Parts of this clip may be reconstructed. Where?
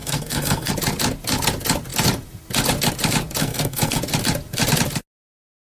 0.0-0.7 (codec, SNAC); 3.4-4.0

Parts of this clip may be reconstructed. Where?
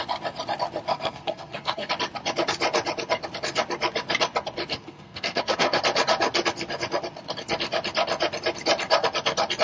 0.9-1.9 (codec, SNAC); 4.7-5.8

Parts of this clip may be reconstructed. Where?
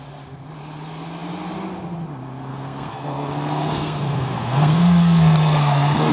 2.5-6.1 (codec, SNAC)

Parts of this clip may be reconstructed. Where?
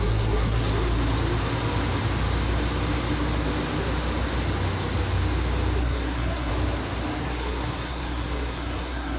0.0-0.7 (codec, SNAC); 5.8-6.5; 7.2-9.2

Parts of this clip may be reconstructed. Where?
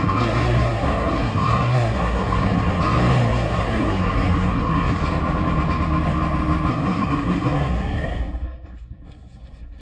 0.0-2.7 (codec, SNAC); 3.3-5.0; 6.7-9.8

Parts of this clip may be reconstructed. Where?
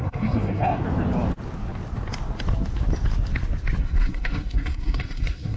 0.0-0.8 (codec, SNAC); 3.8-5.6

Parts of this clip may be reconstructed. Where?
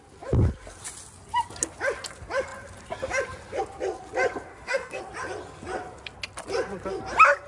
4.5-5.0 (codec, SNAC)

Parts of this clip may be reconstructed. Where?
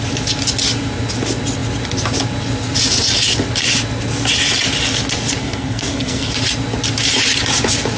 5.4-6.3 (codec, SNAC)